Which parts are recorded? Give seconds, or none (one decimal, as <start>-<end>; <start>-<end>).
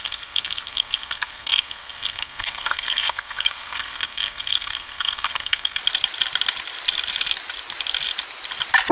5.8-8.9